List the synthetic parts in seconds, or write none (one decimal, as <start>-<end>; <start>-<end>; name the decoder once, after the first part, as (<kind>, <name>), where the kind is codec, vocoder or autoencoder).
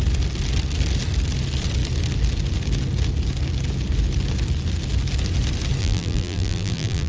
5.8-7.1 (vocoder, BigVGAN v2)